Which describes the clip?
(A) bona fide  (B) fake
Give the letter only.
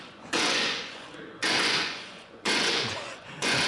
B